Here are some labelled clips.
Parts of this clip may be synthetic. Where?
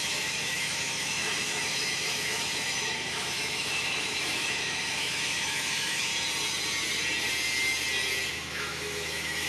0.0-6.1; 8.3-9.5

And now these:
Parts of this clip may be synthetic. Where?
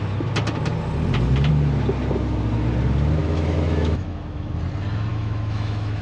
3.2-4.6; 5.1-6.0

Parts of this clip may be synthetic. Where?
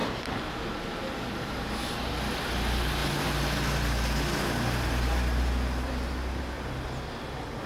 none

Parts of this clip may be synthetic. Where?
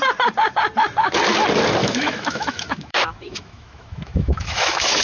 1.8-5.0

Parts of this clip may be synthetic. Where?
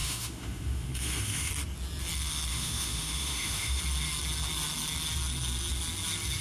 0.0-1.5; 2.5-3.8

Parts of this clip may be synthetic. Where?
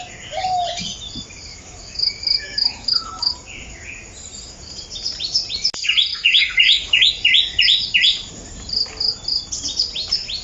1.5-3.3; 6.1-7.1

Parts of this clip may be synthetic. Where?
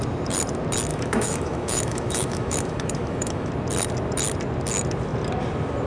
0.9-3.5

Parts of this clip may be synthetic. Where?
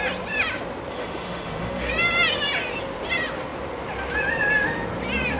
0.9-1.9